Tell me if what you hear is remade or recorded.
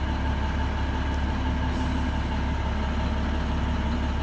recorded